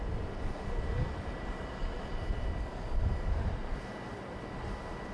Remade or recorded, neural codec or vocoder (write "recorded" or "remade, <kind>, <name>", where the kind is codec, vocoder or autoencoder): recorded